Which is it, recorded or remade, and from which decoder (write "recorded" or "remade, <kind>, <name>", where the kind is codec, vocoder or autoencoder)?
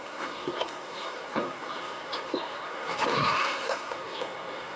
remade, codec, SNAC